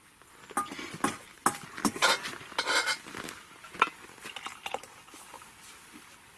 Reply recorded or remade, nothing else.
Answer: recorded